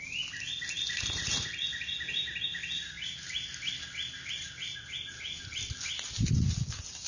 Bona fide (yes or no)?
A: yes